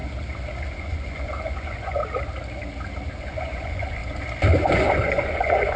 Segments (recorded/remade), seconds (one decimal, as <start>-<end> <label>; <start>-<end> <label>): 0.0-0.7 recorded; 0.7-2.0 remade; 2.0-3.2 recorded; 3.2-4.0 remade; 4.0-4.6 recorded; 4.6-5.8 remade